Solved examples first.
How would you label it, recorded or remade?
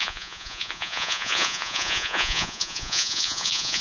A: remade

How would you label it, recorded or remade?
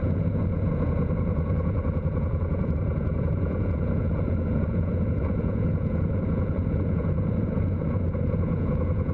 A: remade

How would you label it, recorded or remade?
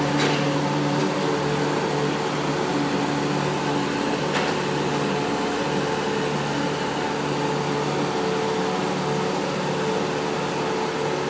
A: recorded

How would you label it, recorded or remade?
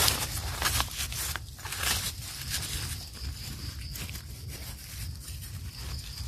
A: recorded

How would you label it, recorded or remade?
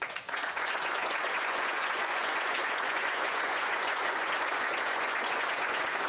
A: remade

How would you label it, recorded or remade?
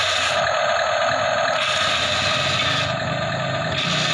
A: recorded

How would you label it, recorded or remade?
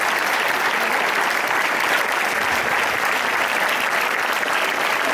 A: recorded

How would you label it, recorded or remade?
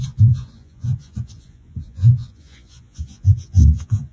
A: remade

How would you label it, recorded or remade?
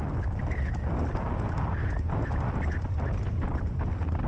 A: recorded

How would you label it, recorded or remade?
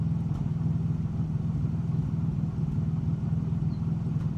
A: recorded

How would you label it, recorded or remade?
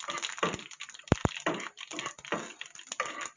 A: recorded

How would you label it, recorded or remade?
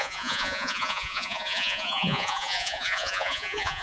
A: remade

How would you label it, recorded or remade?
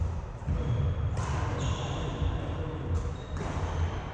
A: recorded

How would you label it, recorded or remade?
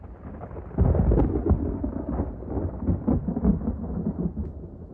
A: recorded